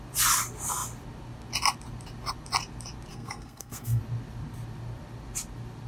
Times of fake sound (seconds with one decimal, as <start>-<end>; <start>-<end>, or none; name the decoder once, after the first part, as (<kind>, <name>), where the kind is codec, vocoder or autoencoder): 3.1-4.0 (codec, SNAC)